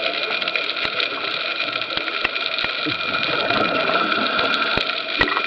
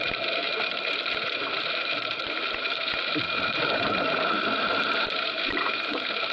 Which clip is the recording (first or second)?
first